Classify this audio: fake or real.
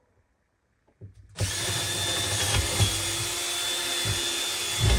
real